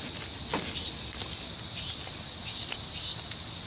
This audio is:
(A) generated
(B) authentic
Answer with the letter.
B